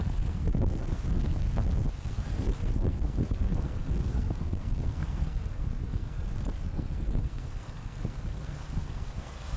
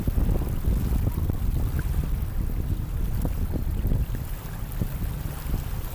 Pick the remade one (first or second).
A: first